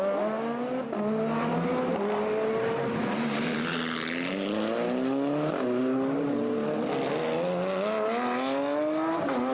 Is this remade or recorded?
recorded